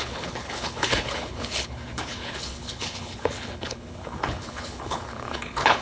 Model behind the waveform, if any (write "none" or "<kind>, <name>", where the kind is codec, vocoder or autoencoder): codec, HILCodec